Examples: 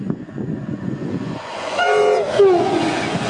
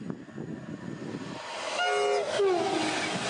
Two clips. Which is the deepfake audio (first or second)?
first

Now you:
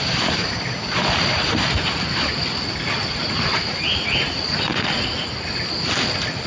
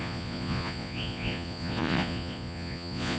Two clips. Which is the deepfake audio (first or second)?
second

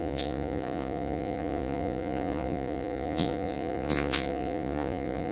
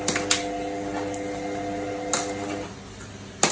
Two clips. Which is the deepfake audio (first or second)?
first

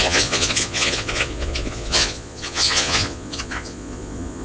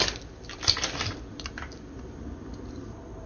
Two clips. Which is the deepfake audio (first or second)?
first